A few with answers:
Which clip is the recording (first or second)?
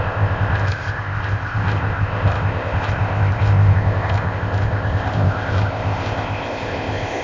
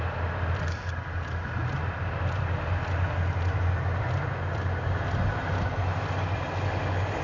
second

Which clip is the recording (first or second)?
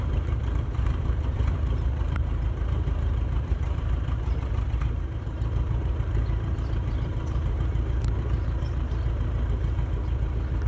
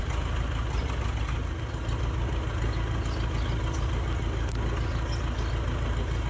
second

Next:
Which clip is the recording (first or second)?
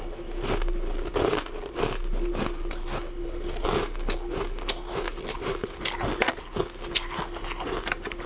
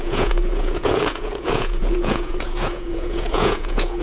first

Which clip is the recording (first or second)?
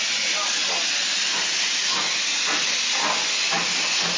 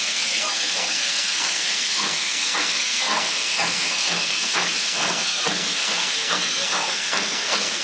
first